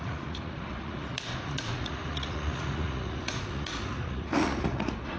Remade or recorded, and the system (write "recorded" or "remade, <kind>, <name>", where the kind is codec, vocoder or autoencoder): remade, vocoder, Vocos